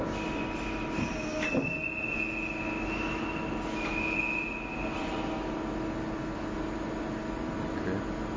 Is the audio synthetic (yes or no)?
no